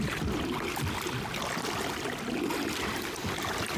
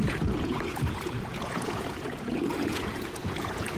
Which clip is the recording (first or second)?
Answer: first